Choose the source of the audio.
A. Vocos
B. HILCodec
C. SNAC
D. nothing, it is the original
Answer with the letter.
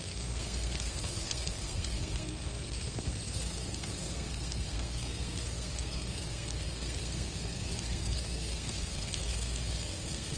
C